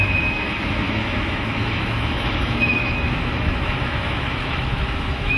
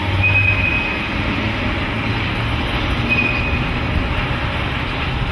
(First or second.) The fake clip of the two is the first